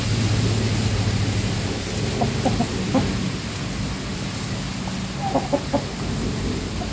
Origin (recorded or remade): recorded